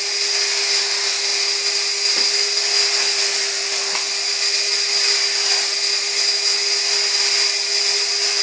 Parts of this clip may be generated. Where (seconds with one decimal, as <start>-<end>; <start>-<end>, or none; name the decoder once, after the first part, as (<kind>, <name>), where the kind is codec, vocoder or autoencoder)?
none